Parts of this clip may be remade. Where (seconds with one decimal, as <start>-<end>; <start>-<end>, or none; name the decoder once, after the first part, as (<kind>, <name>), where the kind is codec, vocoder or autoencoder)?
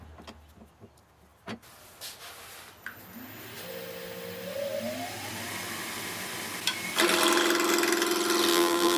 8.5-9.0 (vocoder, BigVGAN v2)